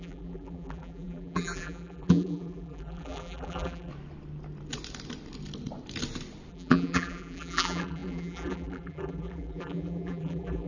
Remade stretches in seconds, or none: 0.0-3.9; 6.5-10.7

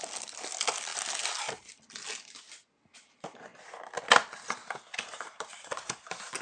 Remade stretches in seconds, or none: none

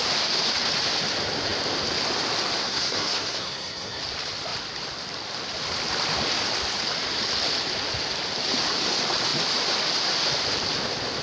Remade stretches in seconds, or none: 2.6-4.0

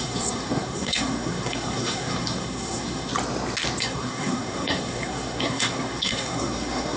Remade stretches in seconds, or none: 0.0-3.1; 3.8-7.0